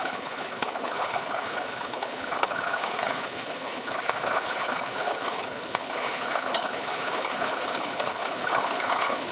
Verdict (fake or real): fake